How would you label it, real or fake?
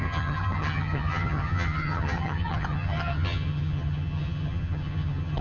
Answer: fake